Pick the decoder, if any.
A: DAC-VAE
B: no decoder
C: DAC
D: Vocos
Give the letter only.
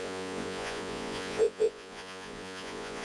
D